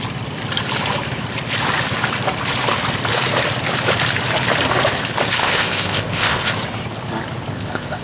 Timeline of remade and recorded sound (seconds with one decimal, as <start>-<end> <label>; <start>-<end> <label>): 0.0-5.4 recorded; 5.4-6.5 remade; 6.5-7.5 recorded; 7.5-8.0 remade